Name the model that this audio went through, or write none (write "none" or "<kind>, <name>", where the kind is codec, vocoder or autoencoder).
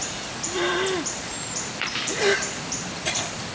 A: vocoder, BigVGAN v2